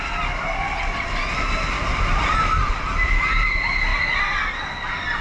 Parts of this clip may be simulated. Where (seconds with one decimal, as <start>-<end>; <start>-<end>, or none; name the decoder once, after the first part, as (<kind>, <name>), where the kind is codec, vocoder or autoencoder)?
none